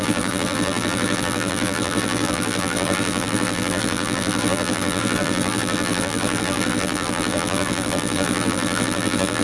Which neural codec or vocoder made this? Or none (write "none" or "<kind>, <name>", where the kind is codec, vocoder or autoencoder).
vocoder, BigVGAN v2